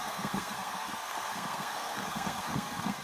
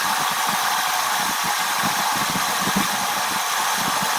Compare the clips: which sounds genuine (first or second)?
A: second